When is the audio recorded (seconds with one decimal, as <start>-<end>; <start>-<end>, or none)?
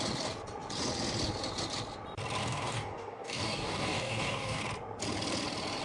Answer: 0.0-2.4; 4.6-5.8